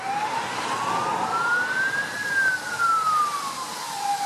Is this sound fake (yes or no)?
no